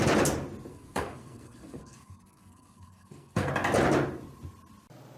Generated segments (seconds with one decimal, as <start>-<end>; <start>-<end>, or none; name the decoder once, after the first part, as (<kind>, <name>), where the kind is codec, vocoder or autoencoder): 0.7-3.5 (codec, SNAC)